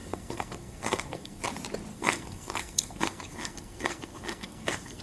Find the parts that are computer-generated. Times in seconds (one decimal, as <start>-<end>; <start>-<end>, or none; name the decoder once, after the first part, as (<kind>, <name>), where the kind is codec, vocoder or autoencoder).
0.0-1.4 (codec, SNAC); 1.9-5.0

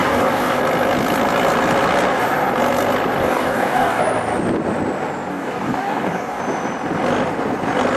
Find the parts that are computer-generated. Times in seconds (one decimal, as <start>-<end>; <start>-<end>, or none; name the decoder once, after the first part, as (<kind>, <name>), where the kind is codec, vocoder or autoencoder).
0.0-0.6 (codec, DAC); 3.2-4.0; 5.3-6.4

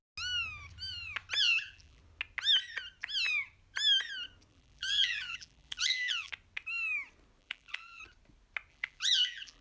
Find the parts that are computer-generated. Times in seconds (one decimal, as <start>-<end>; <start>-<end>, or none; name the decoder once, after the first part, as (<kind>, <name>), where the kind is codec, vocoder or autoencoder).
1.4-2.0 (vocoder, BigVGAN v2); 4.5-6.3; 7.4-8.0; 8.7-9.6

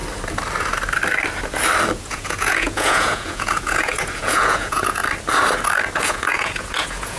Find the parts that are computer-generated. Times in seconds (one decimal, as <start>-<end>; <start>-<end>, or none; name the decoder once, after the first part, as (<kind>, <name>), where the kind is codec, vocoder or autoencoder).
2.0-5.0 (vocoder, Vocos); 6.0-7.2

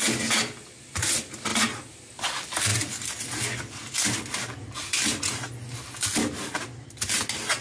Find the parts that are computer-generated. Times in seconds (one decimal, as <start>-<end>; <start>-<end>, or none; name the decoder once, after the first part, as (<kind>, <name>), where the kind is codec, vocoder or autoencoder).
none

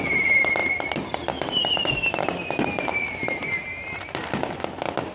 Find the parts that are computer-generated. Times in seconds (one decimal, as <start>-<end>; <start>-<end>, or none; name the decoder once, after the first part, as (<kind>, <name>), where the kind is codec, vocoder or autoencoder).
0.6-1.1 (vocoder, BigVGAN v2); 1.6-4.2